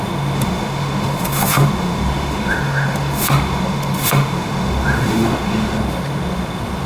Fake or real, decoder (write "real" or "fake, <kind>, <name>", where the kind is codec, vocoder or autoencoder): fake, autoencoder, DAC-VAE